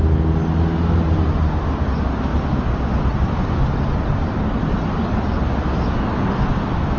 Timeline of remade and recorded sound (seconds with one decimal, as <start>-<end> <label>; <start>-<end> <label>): 0.0-2.3 recorded; 2.3-6.5 remade; 6.5-7.0 recorded

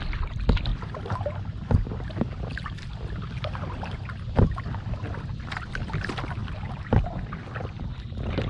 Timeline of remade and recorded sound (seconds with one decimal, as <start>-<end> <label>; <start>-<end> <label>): 0.0-6.4 recorded; 6.4-7.1 remade; 7.1-8.5 recorded

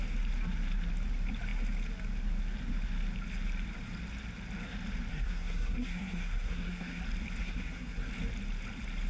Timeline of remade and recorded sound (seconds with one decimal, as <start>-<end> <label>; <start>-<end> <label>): 0.0-5.1 recorded; 5.1-7.0 remade; 7.0-7.4 recorded; 7.4-8.1 remade; 8.1-9.1 recorded

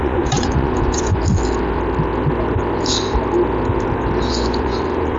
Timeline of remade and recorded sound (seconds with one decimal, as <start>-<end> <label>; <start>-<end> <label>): 0.0-1.2 remade; 1.2-4.3 recorded; 4.3-5.2 remade

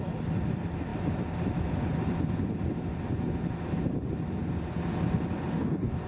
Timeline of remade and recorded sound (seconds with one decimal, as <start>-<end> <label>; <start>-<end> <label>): 0.0-5.5 recorded; 5.5-6.1 remade

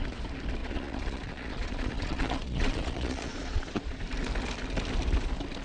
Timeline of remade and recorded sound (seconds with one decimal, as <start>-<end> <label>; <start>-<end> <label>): 0.0-0.6 recorded; 0.6-4.0 remade; 4.0-5.6 recorded

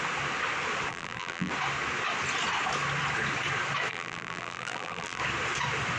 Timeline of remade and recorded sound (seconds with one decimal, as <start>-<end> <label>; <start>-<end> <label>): 0.0-0.9 recorded; 0.9-1.5 remade; 1.5-3.9 recorded; 3.9-5.2 remade; 5.2-6.0 recorded

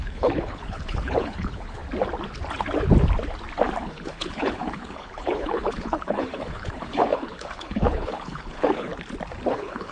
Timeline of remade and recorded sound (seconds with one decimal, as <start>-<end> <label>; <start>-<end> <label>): 0.0-1.8 remade; 1.8-3.8 recorded; 3.8-8.9 remade; 8.9-9.5 recorded; 9.5-9.9 remade